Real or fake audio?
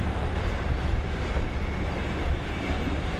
fake